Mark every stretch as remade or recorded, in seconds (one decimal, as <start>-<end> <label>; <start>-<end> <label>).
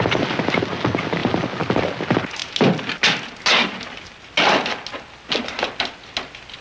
0.0-6.6 recorded